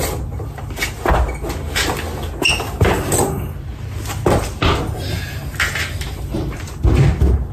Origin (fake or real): real